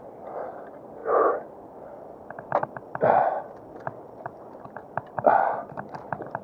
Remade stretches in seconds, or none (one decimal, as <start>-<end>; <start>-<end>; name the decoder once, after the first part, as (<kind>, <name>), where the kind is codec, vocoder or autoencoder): none